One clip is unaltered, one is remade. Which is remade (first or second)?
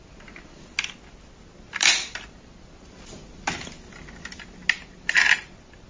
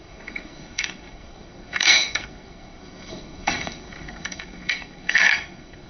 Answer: second